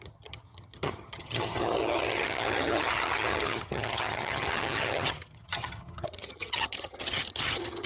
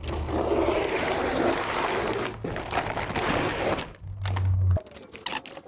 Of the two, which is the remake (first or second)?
first